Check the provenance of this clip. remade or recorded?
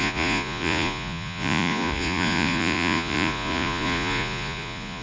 remade